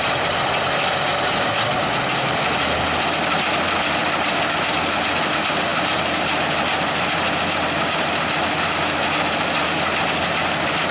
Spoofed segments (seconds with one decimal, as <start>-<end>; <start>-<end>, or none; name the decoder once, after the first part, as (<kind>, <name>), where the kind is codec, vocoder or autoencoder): none